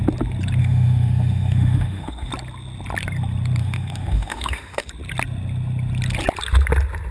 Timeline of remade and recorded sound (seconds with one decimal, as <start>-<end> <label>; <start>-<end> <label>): 0.0-0.6 recorded; 0.6-2.3 remade; 2.3-3.6 recorded; 3.6-4.9 remade; 4.9-7.1 recorded